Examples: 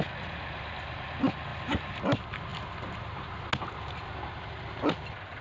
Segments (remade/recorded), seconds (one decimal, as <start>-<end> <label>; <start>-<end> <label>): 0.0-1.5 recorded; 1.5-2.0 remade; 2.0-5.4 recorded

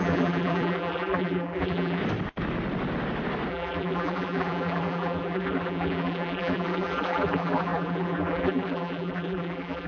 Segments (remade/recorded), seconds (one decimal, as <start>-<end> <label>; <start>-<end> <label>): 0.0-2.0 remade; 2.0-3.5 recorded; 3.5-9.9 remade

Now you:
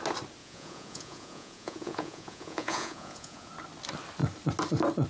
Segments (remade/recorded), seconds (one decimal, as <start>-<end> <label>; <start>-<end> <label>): 0.0-0.4 recorded; 0.4-3.5 remade; 3.5-5.1 recorded